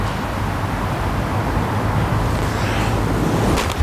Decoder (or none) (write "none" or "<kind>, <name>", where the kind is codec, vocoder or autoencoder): none